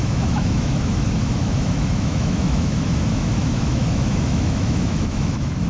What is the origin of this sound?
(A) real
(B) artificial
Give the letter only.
B